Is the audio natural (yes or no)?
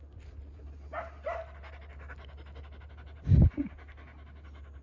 yes